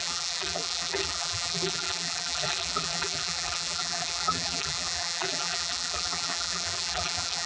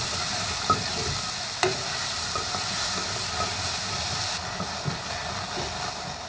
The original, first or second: second